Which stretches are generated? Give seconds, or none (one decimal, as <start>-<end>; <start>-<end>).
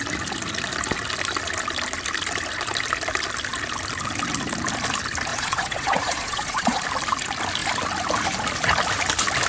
5.3-6.8